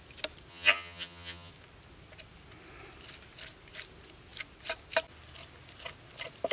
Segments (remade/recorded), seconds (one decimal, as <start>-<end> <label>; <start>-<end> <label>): 0.0-0.5 recorded; 0.5-1.5 remade; 1.5-6.5 recorded